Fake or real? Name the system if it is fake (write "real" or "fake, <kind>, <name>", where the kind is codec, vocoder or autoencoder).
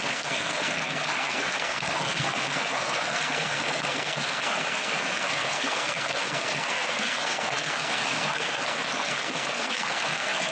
fake, codec, SNAC